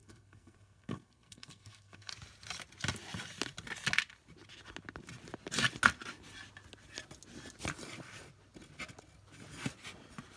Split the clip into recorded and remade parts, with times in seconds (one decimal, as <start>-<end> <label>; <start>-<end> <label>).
0.0-2.1 remade; 2.1-10.4 recorded